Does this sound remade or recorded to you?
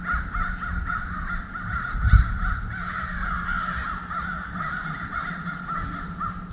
recorded